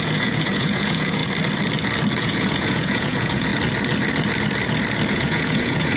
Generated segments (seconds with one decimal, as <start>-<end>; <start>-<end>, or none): 0.0-1.2; 2.2-3.5; 5.1-6.0